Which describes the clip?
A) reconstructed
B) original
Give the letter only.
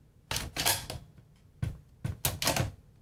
B